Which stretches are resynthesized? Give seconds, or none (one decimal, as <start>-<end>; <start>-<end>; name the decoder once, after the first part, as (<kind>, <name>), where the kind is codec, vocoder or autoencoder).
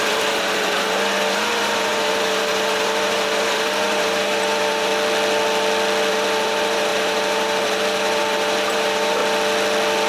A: 0.0-4.9 (vocoder, BigVGAN v2); 6.1-9.2